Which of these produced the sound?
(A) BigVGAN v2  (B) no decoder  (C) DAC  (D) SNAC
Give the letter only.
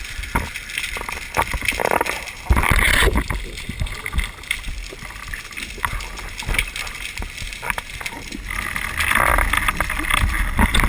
B